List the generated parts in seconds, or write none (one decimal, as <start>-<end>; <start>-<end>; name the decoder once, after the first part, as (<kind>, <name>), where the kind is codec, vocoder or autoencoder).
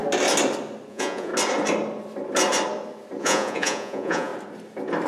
0.9-1.3 (vocoder, Vocos); 3.2-4.3